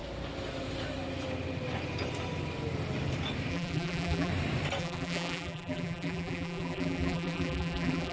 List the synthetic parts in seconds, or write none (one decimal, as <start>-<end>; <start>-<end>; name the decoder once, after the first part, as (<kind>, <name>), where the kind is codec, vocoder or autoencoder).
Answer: 3.5-4.3 (vocoder, BigVGAN v2); 4.8-8.1